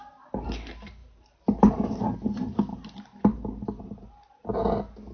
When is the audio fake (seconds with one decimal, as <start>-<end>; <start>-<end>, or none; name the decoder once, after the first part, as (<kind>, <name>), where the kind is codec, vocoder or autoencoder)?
1.0-1.7 (vocoder, BigVGAN v2); 2.7-4.4